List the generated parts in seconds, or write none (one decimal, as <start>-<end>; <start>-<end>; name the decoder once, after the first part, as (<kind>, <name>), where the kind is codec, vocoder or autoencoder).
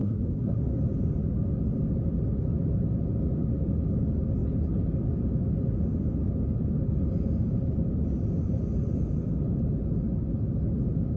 0.0-0.7 (codec, SNAC)